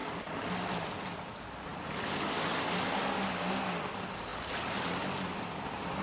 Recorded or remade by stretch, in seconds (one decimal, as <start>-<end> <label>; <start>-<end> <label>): 0.0-0.6 remade; 0.6-6.0 recorded